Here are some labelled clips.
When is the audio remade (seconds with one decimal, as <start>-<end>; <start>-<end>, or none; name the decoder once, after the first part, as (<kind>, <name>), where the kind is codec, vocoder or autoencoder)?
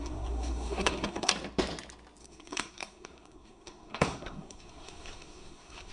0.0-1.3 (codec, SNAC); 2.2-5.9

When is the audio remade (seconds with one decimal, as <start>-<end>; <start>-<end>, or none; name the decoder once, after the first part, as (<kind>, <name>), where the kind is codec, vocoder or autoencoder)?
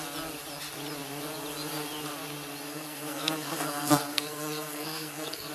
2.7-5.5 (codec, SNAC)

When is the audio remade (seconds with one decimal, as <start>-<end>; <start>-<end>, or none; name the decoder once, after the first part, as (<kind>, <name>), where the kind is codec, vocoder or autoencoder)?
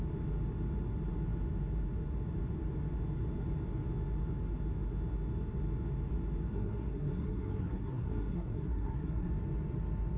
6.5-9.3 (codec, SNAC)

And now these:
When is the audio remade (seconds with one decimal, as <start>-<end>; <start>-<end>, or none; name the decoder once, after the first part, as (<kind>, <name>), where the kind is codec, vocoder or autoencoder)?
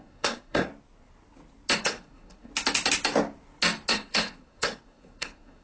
0.0-0.7 (codec, SNAC); 1.8-2.5; 3.9-5.6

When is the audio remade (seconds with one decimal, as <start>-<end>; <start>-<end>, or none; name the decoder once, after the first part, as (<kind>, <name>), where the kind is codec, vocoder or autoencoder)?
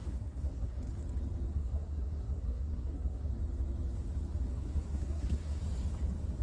0.0-0.8 (codec, SNAC); 1.5-3.3; 4.5-5.6